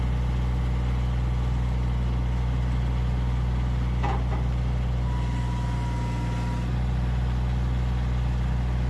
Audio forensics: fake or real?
real